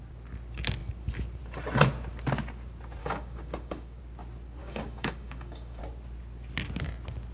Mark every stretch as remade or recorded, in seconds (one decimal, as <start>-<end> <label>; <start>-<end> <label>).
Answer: 0.0-3.0 recorded; 3.0-4.0 remade; 4.0-4.6 recorded; 4.6-5.8 remade; 5.8-7.3 recorded